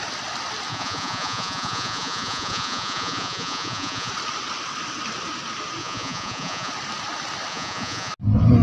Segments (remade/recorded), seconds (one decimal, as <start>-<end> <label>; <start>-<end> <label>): 0.0-0.7 recorded; 0.7-4.1 remade; 4.1-5.8 recorded; 5.8-6.7 remade; 6.7-7.5 recorded; 7.5-8.1 remade; 8.1-8.6 recorded